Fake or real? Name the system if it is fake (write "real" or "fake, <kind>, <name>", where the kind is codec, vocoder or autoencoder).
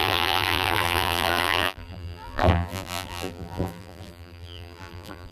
fake, vocoder, BigVGAN v2